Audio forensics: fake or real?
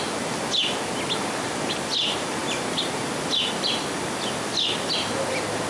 real